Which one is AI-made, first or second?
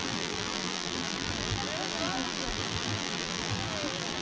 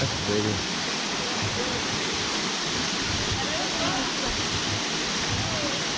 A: first